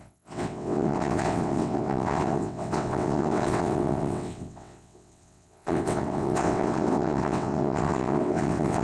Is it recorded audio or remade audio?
remade